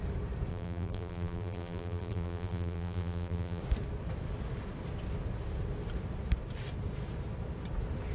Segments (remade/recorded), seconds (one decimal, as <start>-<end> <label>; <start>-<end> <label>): 0.0-0.5 recorded; 0.5-3.6 remade; 3.6-8.1 recorded